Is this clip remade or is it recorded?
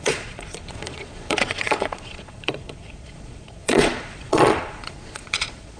remade